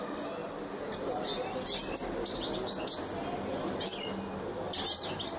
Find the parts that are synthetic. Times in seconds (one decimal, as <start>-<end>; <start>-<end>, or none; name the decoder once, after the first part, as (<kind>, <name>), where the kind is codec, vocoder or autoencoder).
none